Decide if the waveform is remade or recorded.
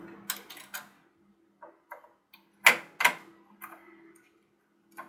recorded